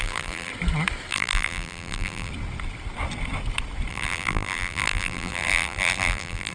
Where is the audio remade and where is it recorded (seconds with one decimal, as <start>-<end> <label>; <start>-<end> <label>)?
0.0-0.5 remade; 0.5-1.1 recorded; 1.1-2.3 remade; 2.3-3.9 recorded; 3.9-6.5 remade